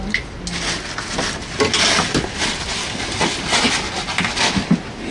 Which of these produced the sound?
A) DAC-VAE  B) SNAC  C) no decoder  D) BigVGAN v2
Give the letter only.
C